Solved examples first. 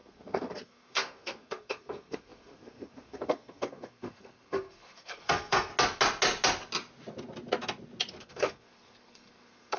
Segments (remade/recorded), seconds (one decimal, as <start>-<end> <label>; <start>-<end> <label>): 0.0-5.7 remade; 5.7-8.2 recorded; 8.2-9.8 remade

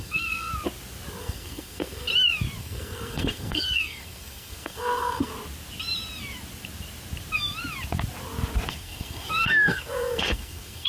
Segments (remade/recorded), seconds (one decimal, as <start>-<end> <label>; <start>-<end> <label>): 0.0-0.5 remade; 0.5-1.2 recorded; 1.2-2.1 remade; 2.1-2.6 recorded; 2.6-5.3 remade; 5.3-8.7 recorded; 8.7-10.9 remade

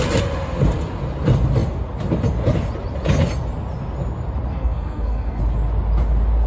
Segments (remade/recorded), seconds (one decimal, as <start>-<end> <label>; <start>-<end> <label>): 0.0-4.5 recorded; 4.5-5.4 remade; 5.4-6.5 recorded

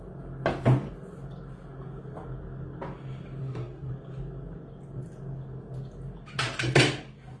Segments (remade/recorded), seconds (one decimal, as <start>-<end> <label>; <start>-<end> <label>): 0.0-3.4 recorded; 3.4-3.9 remade; 3.9-7.4 recorded

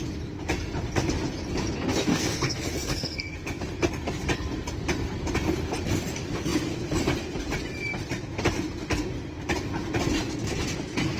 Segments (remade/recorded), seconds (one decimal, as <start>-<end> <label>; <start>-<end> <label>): 0.0-2.1 recorded; 2.1-3.3 remade; 3.3-11.2 recorded

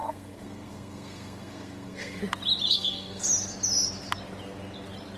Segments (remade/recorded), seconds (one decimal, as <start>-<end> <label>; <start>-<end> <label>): 0.0-2.2 remade; 2.2-2.7 recorded; 2.7-3.2 remade; 3.2-5.2 recorded